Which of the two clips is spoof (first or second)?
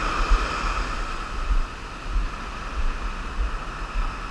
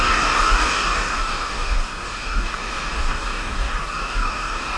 second